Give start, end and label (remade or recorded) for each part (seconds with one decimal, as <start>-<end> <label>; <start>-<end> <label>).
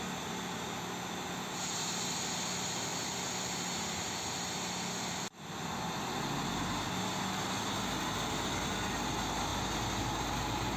0.0-10.8 recorded